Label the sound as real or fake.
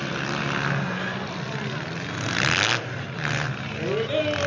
real